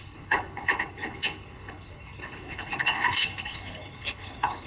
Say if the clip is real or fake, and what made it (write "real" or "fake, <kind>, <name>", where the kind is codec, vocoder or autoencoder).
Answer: fake, codec, HILCodec